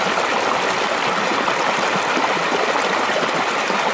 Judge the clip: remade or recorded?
recorded